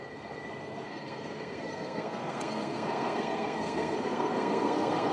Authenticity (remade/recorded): remade